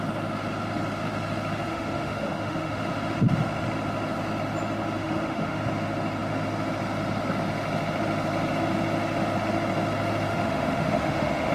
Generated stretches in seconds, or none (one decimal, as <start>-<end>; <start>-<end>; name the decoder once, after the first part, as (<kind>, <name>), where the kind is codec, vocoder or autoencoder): 1.7-2.9 (autoencoder, DAC-VAE); 5.0-5.6; 10.3-11.5